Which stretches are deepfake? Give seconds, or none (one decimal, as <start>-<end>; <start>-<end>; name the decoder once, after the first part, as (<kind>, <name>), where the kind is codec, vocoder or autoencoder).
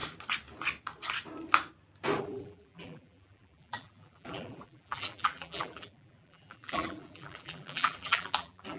2.2-8.8 (vocoder, BigVGAN v2)